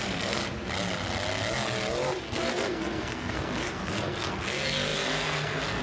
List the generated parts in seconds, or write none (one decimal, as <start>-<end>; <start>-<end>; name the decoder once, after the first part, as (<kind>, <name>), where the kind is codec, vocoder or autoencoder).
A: 0.0-0.4 (codec, SNAC); 2.2-5.8